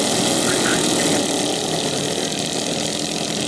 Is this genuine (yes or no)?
yes